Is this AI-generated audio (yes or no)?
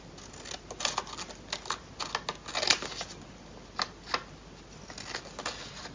no